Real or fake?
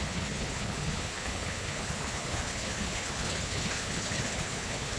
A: fake